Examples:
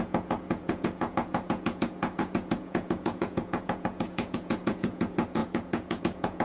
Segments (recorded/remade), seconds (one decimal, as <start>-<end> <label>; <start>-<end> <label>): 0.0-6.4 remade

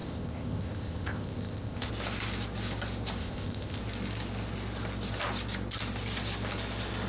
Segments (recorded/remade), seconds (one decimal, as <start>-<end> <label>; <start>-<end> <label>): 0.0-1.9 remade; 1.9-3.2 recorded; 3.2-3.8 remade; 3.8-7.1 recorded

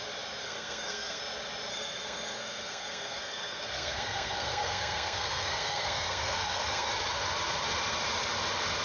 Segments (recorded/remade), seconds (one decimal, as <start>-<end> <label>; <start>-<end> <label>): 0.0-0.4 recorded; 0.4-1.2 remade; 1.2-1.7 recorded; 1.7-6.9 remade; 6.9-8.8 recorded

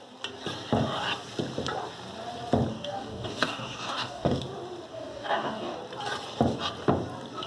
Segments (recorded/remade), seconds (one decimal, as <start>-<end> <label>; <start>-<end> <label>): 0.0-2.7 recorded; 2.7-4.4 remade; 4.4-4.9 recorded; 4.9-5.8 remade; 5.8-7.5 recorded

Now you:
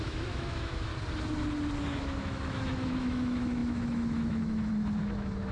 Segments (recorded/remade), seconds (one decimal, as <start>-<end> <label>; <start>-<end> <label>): 0.0-0.9 remade; 0.9-2.0 recorded; 2.0-5.5 remade

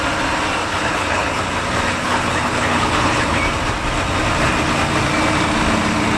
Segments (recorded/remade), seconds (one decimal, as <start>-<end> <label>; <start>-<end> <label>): 0.0-0.6 recorded; 0.6-1.4 remade; 1.4-1.9 recorded; 1.9-3.4 remade; 3.4-6.2 recorded